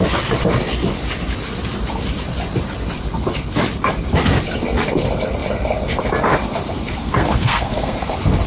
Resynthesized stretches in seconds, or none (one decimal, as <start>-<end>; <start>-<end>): 7.0-8.1